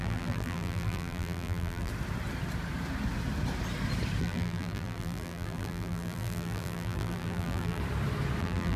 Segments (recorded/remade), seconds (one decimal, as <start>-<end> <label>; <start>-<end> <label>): 0.0-1.9 remade; 1.9-4.2 recorded; 4.2-7.8 remade; 7.8-8.4 recorded; 8.4-8.8 remade